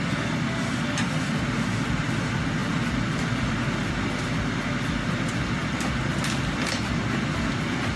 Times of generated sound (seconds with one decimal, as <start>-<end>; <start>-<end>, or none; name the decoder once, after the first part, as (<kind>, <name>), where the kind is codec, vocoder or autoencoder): none